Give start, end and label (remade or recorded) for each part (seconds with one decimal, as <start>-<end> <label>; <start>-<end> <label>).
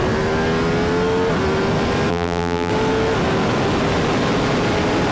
0.0-2.1 recorded; 2.1-2.7 remade; 2.7-5.1 recorded